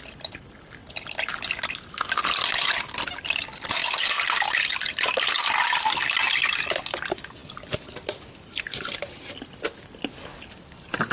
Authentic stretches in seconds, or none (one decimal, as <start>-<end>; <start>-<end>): 0.0-11.1